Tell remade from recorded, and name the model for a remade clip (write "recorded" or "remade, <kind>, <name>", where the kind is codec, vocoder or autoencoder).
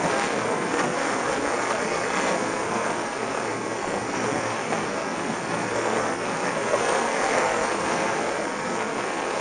remade, codec, SNAC